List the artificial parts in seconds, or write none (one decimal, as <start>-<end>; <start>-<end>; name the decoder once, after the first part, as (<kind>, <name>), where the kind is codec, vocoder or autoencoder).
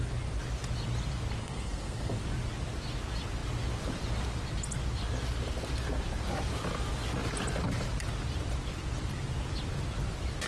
1.4-2.2 (codec, SNAC)